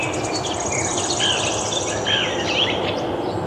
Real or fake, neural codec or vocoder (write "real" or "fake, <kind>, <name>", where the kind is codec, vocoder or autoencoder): real